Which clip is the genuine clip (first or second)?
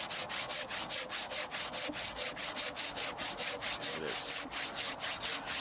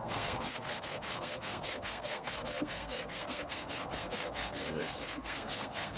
first